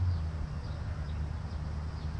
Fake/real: real